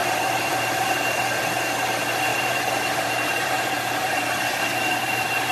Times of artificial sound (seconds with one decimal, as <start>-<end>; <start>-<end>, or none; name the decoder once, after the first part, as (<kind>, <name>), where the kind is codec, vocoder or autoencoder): 0.0-1.2 (vocoder, BigVGAN v2); 2.3-4.4